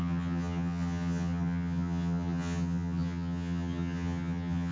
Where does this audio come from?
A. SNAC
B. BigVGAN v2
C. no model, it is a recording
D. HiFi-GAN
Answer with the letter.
D